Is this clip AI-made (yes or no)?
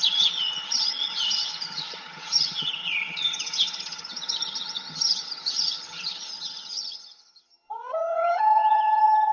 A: yes